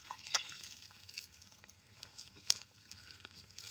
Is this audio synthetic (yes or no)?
yes